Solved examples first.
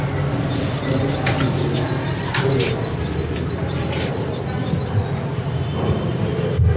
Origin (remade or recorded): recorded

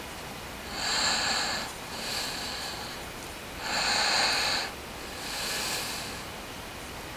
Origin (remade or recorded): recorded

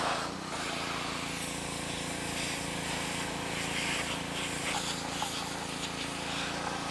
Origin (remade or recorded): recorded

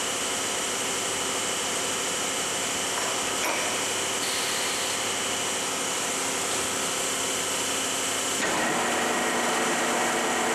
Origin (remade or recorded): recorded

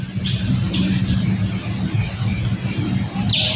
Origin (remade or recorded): recorded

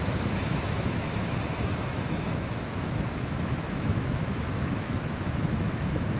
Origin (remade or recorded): remade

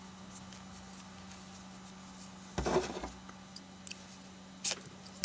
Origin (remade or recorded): recorded